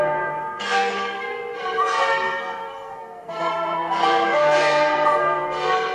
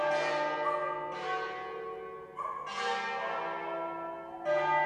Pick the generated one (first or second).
first